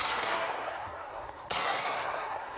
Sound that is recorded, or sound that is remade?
remade